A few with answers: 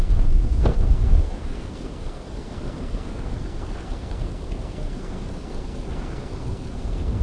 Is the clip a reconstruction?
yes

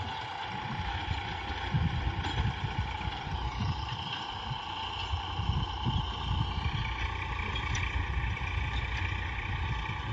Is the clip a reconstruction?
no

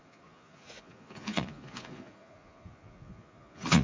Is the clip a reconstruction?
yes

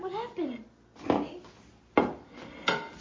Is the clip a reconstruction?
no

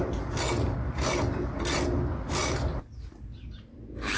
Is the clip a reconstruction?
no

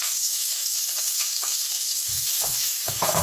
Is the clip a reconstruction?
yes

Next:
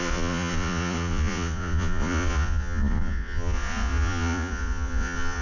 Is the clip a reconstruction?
yes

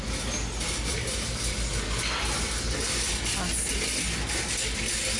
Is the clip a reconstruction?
no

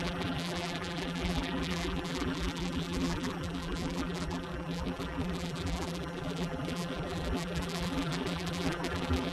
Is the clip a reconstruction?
yes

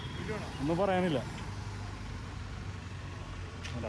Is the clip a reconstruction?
no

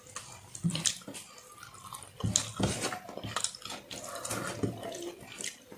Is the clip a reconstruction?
no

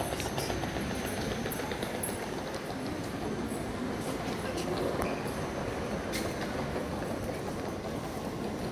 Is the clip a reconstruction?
no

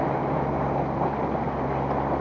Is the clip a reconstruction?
no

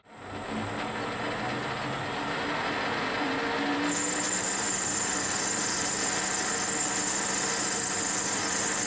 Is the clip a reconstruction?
no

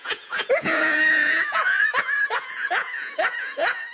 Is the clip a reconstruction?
yes